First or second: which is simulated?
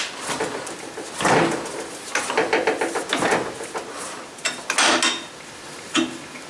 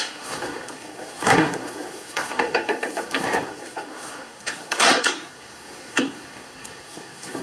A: second